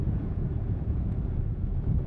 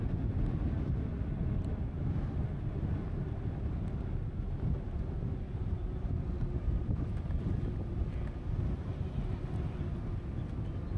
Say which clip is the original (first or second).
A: second